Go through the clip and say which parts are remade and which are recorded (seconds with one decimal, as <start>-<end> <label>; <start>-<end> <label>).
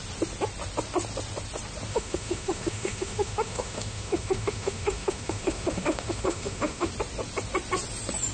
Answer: 0.0-1.9 recorded; 1.9-6.9 remade; 6.9-8.3 recorded